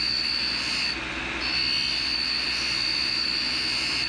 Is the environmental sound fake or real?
real